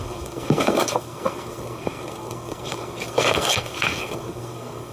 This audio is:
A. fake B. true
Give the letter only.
A